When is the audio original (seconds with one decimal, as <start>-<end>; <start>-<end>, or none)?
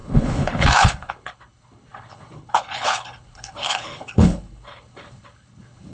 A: none